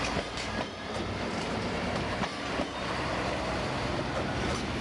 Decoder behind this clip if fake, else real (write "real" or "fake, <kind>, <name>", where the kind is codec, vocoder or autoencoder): fake, vocoder, BigVGAN v2